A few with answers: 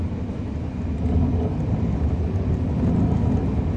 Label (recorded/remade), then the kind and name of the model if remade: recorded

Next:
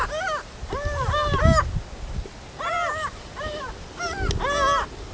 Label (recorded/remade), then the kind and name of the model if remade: recorded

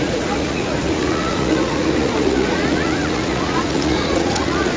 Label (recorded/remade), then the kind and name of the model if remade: remade, vocoder, Vocos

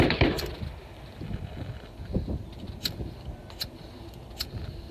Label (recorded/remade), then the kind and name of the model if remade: recorded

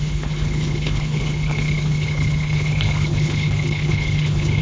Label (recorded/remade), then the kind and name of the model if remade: remade, codec, HILCodec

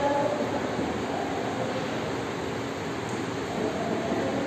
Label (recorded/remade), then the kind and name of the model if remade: recorded